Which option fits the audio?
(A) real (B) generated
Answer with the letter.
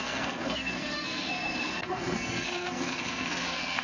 B